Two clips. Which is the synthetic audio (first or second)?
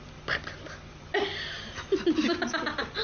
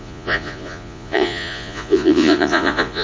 second